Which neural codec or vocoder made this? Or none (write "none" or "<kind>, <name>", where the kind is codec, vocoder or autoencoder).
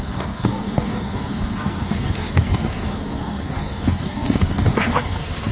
codec, SNAC